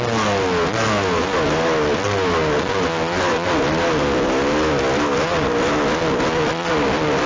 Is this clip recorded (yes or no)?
yes